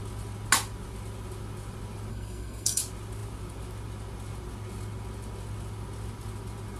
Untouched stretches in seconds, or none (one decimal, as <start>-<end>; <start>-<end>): 0.0-2.1; 2.8-6.8